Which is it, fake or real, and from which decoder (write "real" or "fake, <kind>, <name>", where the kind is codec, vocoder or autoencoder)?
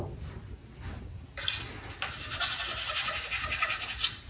real